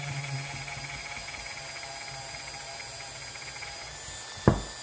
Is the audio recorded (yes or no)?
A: yes